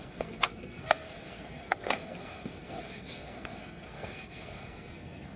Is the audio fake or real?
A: fake